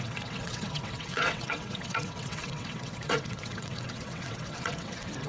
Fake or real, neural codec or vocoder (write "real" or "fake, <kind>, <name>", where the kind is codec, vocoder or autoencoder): fake, vocoder, WaveNeXt